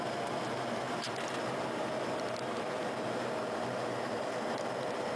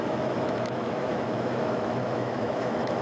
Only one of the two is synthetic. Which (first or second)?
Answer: second